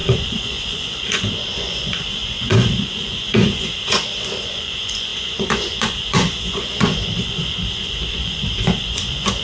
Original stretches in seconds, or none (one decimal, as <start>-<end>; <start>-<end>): none